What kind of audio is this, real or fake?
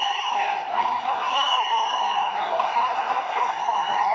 fake